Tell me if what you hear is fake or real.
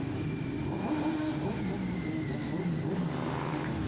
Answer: real